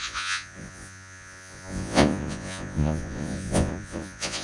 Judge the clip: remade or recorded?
remade